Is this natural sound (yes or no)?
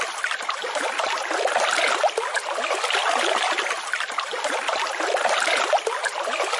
yes